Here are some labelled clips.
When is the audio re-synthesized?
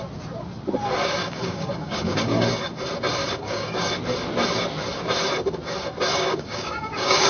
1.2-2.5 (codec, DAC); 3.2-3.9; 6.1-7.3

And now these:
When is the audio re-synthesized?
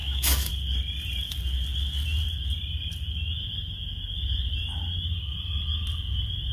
0.0-0.5 (codec, DAC)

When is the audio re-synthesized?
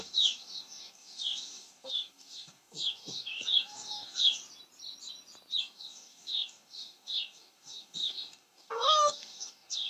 0.0-4.4 (codec, DAC); 5.6-9.9